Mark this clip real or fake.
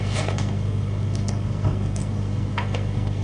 fake